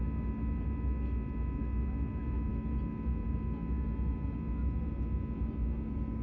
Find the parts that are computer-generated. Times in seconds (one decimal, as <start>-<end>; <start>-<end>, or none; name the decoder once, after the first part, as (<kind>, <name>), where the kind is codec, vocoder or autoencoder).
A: none